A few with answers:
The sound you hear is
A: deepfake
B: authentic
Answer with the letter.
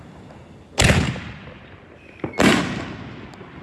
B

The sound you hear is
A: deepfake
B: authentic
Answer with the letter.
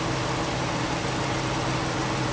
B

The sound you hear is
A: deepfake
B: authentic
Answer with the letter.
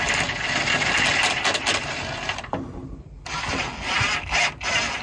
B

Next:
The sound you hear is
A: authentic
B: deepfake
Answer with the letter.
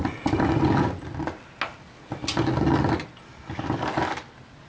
A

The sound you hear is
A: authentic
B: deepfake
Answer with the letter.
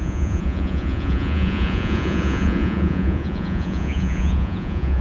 B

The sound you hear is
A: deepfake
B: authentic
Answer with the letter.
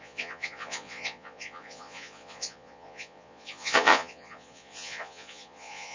A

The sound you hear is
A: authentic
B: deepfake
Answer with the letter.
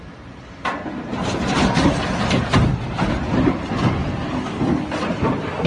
A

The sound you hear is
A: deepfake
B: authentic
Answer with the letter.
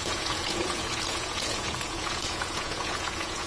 A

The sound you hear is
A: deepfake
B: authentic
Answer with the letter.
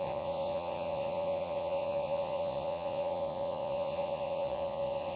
A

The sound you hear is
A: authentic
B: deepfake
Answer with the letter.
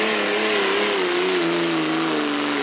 A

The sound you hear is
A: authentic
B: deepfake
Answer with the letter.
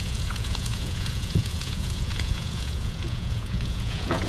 B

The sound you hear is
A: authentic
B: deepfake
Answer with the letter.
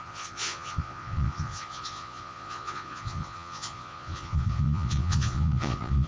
B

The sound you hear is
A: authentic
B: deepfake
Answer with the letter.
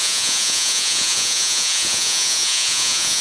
B